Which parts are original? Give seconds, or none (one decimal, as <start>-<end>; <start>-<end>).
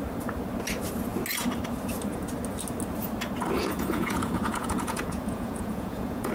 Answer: 0.0-3.6